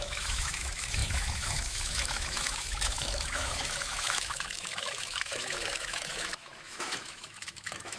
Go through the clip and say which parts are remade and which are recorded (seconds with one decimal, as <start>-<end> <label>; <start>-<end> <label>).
0.0-8.0 remade